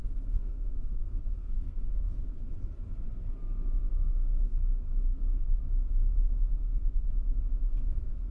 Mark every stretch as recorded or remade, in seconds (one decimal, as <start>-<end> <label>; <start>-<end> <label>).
0.0-2.4 remade; 2.4-3.9 recorded; 3.9-5.6 remade; 5.6-6.0 recorded; 6.0-7.4 remade; 7.4-8.3 recorded